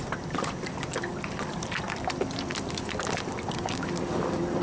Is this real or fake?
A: fake